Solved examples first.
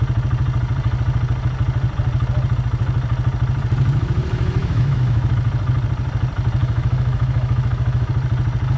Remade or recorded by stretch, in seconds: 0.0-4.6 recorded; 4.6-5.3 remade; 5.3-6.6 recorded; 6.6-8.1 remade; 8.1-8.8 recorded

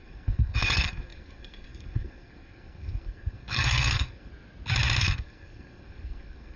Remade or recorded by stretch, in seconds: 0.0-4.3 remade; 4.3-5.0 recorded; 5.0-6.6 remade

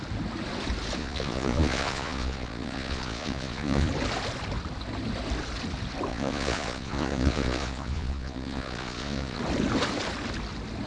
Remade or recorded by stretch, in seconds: 0.0-1.0 recorded; 1.0-3.9 remade; 3.9-6.1 recorded; 6.1-9.4 remade; 9.4-10.9 recorded

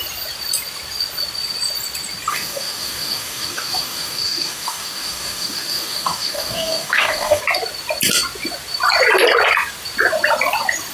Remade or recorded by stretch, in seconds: 0.0-2.3 recorded; 2.3-7.4 remade; 7.4-10.9 recorded